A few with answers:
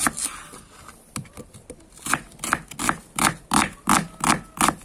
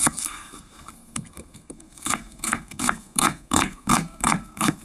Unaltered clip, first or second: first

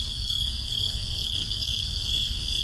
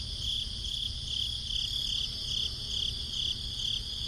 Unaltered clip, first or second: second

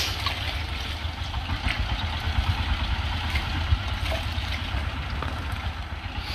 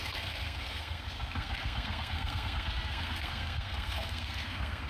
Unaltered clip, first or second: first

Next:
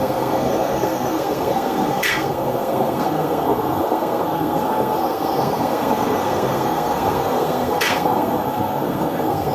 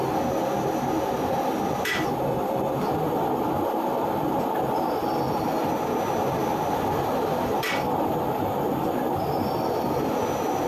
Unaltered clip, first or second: second